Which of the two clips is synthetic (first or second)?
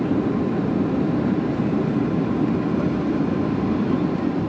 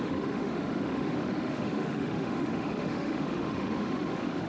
second